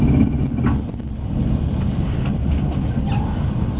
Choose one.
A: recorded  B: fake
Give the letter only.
A